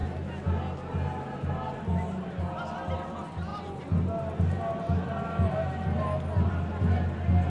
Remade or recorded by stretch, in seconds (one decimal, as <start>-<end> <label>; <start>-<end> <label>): 0.0-7.5 recorded